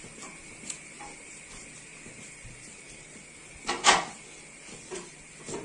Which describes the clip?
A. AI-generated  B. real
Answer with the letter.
B